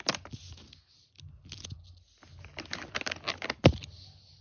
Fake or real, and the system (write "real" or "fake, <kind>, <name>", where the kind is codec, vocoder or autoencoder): real